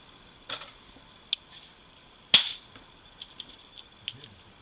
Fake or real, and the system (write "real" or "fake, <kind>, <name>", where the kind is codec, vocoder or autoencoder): real